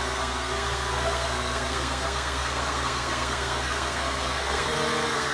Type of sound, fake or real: fake